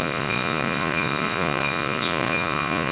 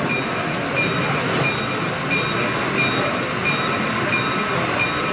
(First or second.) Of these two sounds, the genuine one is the second